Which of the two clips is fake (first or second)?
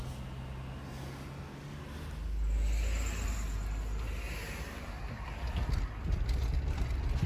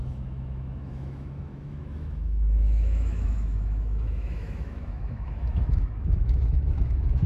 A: second